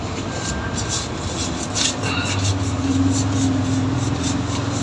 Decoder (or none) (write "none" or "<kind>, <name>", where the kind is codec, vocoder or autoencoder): none